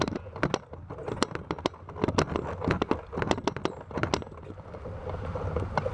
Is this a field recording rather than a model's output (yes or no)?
yes